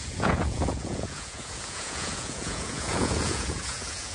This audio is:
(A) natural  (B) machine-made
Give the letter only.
B